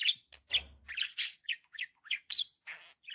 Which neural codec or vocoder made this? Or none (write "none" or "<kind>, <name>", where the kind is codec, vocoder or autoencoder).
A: none